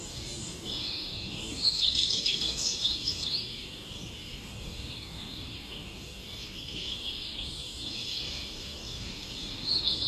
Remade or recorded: remade